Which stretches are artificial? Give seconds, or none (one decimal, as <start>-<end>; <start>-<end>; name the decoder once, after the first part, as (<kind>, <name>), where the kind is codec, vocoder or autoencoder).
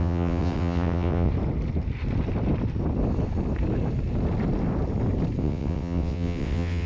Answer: 0.0-1.3 (vocoder, WaveNeXt); 5.4-6.9